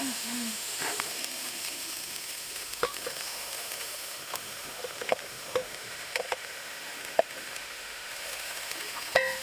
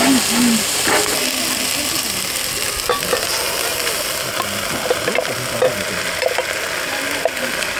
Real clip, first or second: second